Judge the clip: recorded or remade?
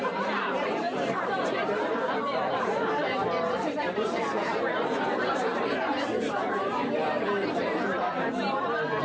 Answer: remade